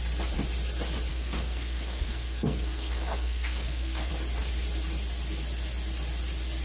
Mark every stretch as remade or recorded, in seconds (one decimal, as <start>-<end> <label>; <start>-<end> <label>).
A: 0.0-1.1 recorded; 1.1-4.1 remade; 4.1-6.6 recorded